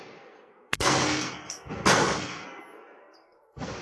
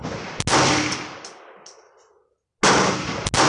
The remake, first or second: first